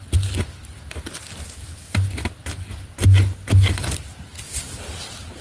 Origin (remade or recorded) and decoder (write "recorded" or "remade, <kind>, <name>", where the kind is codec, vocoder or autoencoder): recorded